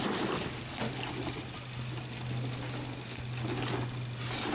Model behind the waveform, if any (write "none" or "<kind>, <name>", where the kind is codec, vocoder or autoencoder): none